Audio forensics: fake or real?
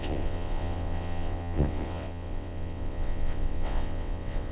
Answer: fake